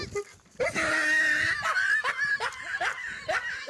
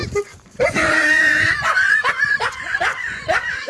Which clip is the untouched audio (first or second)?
first